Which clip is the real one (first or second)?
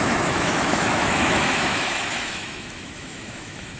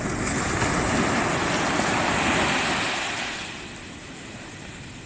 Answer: second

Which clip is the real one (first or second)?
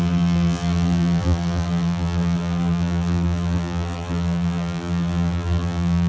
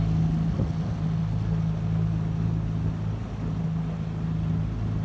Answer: second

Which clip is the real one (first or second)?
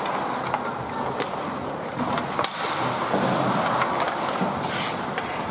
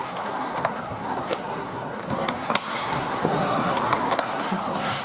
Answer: first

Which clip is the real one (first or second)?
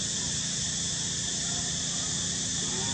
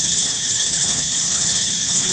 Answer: first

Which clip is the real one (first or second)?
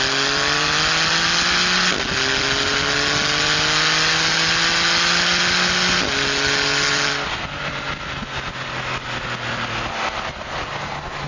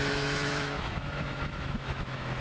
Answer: first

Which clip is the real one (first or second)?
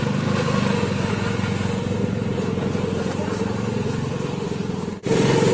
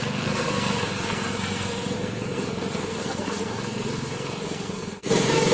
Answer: first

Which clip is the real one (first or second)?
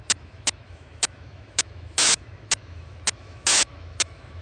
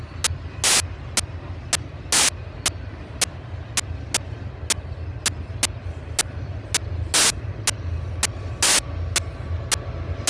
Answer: second